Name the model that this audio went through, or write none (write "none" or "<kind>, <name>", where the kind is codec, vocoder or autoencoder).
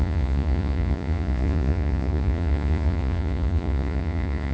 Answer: vocoder, Vocos